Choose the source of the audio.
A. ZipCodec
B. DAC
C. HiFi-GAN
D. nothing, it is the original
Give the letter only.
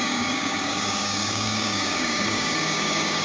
B